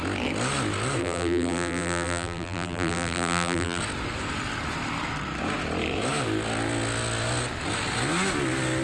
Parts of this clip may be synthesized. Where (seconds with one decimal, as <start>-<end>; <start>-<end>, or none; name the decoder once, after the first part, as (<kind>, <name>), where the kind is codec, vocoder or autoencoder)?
1.0-3.8 (vocoder, BigVGAN v2)